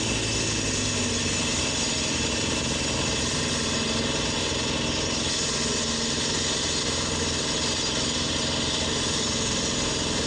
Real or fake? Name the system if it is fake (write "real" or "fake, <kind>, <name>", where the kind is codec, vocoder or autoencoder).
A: real